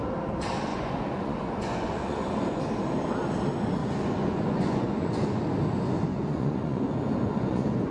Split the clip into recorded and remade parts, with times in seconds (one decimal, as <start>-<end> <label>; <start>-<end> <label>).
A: 0.0-0.7 recorded; 0.7-2.6 remade; 2.6-3.8 recorded; 3.8-5.4 remade; 5.4-6.1 recorded; 6.1-7.9 remade